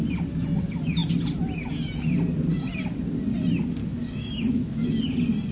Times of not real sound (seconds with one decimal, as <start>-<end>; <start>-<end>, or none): 3.8-4.9